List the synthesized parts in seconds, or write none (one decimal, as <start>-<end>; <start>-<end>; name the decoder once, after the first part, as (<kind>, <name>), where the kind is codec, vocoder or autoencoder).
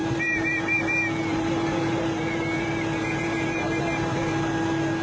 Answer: 0.0-0.8 (vocoder, BigVGAN v2); 1.3-4.3